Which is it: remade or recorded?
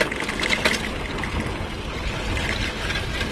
recorded